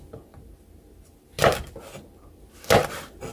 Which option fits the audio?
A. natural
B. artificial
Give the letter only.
A